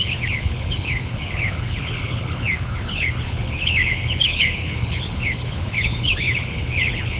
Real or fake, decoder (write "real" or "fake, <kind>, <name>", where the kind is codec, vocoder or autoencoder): fake, codec, HILCodec